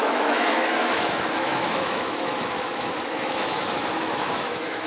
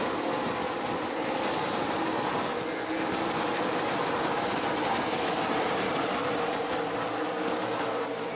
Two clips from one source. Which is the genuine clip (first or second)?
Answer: second